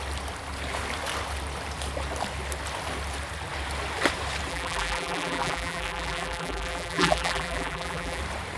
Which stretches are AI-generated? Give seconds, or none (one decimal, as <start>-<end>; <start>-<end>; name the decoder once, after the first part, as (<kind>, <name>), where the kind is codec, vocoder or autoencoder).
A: 4.5-8.2 (vocoder, BigVGAN v2)